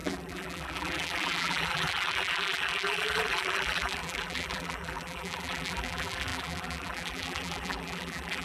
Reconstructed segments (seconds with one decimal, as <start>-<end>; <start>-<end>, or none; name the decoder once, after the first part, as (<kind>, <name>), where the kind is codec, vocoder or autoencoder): 0.0-8.4 (vocoder, BigVGAN v2)